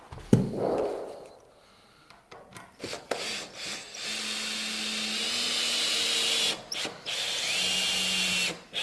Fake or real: real